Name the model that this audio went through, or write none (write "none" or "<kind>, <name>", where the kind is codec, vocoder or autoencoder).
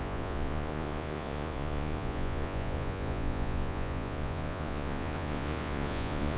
vocoder, Vocos